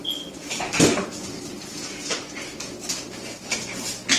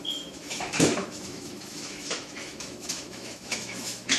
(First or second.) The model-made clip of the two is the second